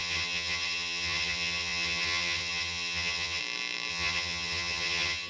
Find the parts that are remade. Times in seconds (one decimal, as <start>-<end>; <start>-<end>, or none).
0.0-3.4; 3.9-5.3